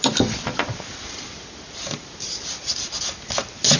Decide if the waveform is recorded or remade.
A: recorded